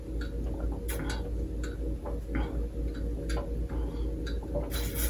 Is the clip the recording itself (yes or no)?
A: yes